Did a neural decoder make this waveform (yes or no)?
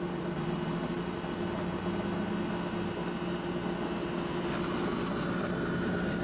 no